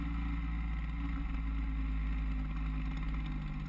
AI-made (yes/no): no